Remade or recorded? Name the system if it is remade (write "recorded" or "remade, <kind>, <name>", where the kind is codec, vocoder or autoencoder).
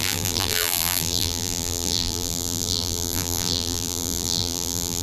remade, vocoder, BigVGAN v2